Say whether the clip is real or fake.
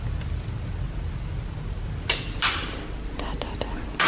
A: real